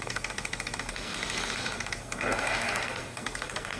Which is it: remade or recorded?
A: remade